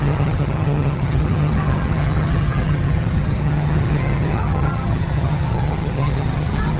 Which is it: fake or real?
fake